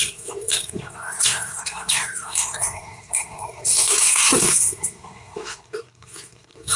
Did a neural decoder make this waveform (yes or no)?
yes